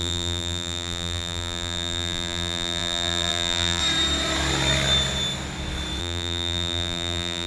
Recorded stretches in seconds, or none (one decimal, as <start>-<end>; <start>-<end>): 3.8-6.0